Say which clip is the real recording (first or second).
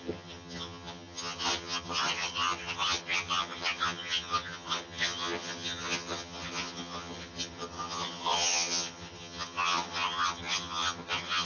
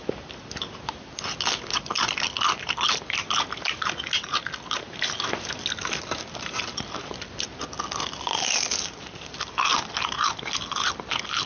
second